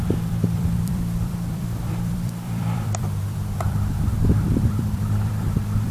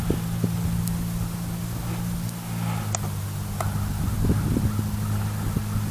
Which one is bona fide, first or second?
second